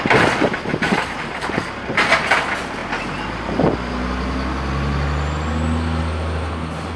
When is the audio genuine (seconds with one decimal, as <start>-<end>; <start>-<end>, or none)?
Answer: 0.0-0.7; 2.1-7.0